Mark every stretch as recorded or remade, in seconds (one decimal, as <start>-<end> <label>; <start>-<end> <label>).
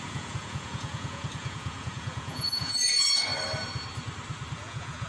0.0-3.3 remade; 3.3-4.5 recorded; 4.5-5.1 remade